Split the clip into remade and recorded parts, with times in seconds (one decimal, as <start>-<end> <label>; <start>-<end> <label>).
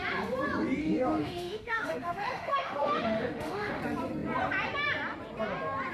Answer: 0.0-0.8 recorded; 0.8-3.8 remade; 3.8-5.9 recorded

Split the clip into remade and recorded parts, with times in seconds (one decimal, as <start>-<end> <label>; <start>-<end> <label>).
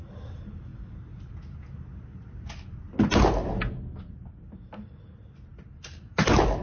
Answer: 0.0-6.6 recorded